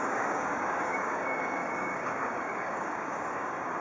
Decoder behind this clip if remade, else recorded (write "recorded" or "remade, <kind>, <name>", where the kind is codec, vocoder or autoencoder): remade, codec, DAC